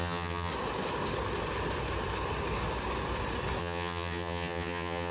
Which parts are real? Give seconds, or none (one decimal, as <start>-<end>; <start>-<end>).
0.5-3.6